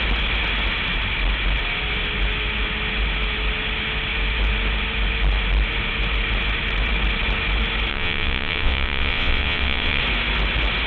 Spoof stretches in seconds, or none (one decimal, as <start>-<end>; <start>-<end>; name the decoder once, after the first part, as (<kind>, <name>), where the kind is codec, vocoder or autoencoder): 7.9-10.0 (vocoder, WaveNeXt)